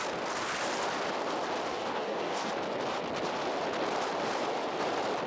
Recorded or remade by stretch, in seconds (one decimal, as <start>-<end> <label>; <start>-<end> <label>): 0.0-1.7 recorded; 1.7-2.5 remade; 2.5-5.3 recorded